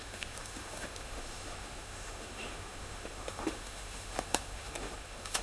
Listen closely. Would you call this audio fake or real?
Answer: fake